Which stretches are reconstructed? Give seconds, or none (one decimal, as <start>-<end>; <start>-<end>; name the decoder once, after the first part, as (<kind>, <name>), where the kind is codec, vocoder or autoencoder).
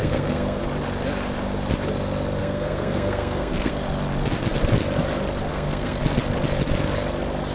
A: 0.0-0.6 (codec, SNAC); 2.4-3.7; 5.5-6.0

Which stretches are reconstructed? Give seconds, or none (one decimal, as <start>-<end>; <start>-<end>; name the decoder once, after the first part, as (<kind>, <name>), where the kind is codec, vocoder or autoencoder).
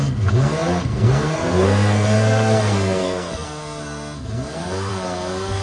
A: 0.0-5.6 (codec, SNAC)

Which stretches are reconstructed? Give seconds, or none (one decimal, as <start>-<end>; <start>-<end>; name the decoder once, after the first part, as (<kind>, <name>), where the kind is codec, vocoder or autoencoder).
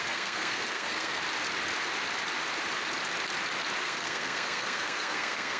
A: 0.0-1.2 (codec, SNAC); 3.8-5.6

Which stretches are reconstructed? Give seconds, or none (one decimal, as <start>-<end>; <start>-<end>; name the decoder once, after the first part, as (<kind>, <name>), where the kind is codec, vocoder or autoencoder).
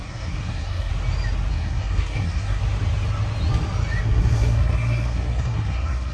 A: 0.0-0.9 (codec, SNAC); 1.5-2.6; 4.0-6.1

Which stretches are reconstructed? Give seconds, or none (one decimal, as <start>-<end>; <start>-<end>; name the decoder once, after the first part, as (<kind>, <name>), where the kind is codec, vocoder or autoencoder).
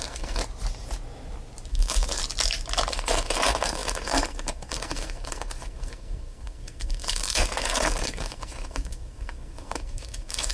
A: 0.0-0.4 (codec, SNAC); 1.7-2.2; 2.9-10.5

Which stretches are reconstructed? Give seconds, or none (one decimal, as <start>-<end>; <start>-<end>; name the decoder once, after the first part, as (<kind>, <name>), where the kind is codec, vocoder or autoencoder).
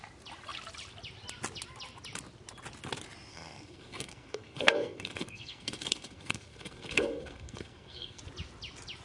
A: 3.3-8.2 (codec, SNAC)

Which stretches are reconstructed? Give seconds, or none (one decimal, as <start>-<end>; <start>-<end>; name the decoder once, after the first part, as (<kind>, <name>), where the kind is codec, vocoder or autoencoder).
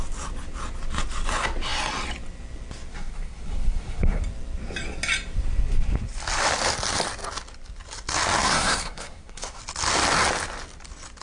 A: 2.9-4.2 (codec, SNAC); 8.4-9.6